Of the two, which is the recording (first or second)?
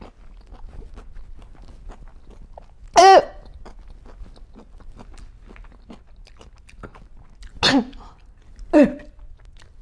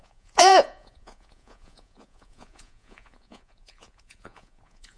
first